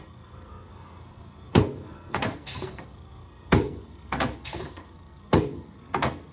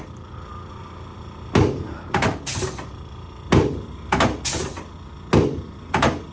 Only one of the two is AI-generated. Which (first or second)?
first